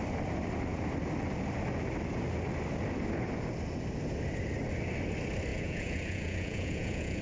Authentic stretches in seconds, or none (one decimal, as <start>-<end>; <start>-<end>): 0.0-5.5